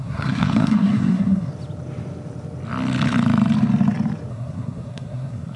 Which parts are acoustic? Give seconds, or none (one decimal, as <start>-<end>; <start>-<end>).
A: 1.5-4.3